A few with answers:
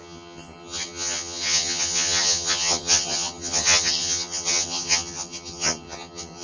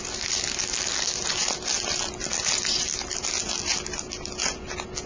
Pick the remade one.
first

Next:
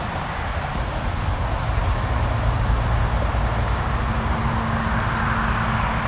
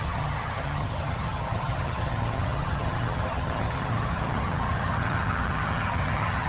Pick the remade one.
second